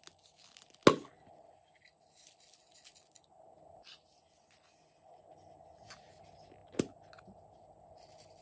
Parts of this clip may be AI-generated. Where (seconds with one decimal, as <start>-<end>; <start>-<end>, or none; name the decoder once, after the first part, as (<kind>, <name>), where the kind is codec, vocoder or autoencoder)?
none